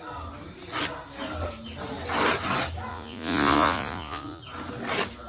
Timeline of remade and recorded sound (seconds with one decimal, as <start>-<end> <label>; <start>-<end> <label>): 0.0-2.9 recorded; 2.9-4.4 remade; 4.4-5.3 recorded